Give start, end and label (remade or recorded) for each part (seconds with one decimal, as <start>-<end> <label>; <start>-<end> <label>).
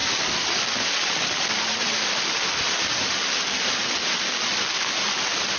0.0-5.6 recorded